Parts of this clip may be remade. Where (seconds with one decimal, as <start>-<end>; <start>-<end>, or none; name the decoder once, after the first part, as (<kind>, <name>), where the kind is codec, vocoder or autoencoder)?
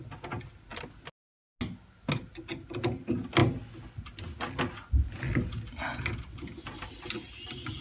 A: none